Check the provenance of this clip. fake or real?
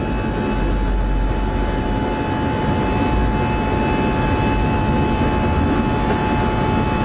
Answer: real